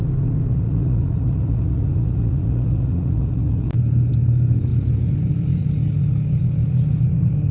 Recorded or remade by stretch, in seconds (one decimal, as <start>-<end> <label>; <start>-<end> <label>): 0.0-0.5 recorded; 0.5-3.7 remade; 3.7-7.5 recorded

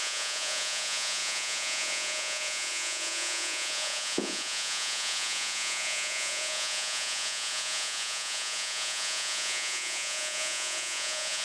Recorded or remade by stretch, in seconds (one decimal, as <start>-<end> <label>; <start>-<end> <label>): 0.0-11.4 remade

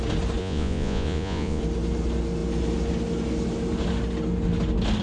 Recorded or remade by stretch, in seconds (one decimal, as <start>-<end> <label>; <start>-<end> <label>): 0.0-0.4 recorded; 0.4-1.6 remade; 1.6-5.0 recorded

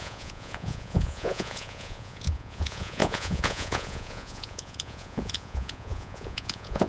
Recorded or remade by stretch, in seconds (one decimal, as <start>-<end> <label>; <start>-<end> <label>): 0.0-6.9 remade